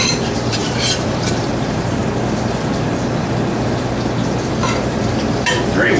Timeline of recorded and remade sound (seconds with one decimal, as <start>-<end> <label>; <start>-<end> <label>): 0.0-2.0 remade; 2.0-4.5 recorded; 4.5-6.0 remade

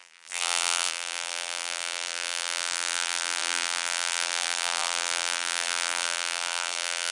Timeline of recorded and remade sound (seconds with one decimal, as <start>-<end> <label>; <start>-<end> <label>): 0.0-7.1 remade

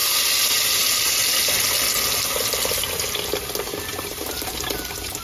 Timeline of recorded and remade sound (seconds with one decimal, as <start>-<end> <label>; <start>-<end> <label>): 0.0-3.9 recorded; 3.9-5.2 remade

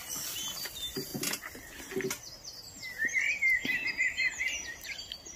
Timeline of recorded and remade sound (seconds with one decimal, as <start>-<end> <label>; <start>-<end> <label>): 0.0-5.4 recorded